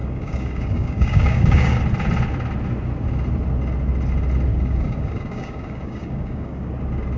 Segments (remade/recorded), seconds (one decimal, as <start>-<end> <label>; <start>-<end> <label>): 0.0-1.8 remade; 1.8-4.5 recorded; 4.5-6.7 remade; 6.7-7.2 recorded